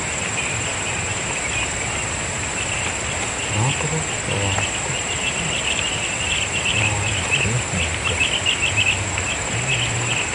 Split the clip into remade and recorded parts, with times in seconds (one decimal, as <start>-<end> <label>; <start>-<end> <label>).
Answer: 0.0-10.3 recorded